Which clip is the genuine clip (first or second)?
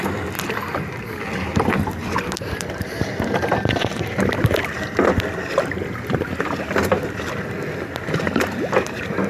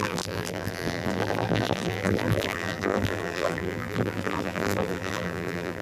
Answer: first